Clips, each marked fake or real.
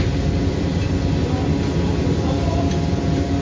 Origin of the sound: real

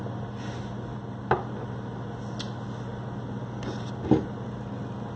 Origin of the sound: real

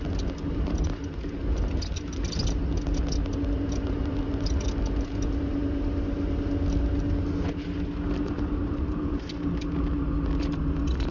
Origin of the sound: real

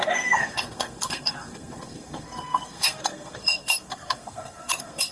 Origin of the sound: fake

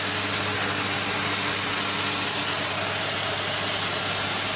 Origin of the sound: real